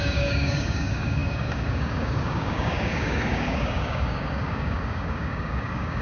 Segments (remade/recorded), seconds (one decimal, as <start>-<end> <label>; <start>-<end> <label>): 0.0-6.0 remade

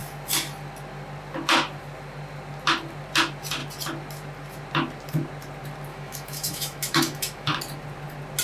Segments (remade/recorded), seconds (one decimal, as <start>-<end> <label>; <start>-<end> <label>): 0.0-5.9 recorded; 5.9-7.6 remade; 7.6-8.4 recorded

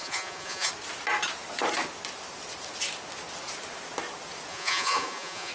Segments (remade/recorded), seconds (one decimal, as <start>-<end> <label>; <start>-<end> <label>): 0.0-0.7 remade; 0.7-4.5 recorded; 4.5-5.5 remade